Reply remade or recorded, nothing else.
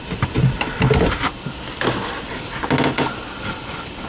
recorded